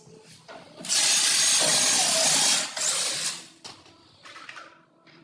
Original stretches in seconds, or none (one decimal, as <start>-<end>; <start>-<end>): 0.0-5.2